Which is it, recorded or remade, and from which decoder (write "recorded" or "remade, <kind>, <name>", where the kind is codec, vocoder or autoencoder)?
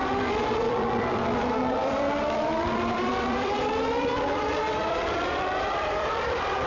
remade, vocoder, BigVGAN v2